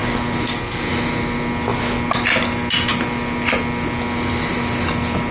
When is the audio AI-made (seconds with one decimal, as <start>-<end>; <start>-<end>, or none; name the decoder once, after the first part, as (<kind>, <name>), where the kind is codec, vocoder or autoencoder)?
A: none